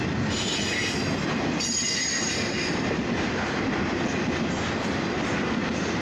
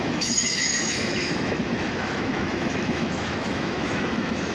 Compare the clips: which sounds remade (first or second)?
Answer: second